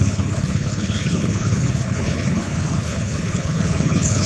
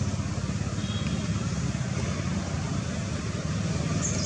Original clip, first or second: second